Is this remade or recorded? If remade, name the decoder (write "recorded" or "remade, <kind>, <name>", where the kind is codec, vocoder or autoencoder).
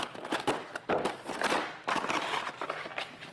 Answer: recorded